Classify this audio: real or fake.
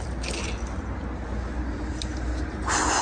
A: real